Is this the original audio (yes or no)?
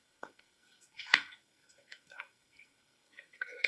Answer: no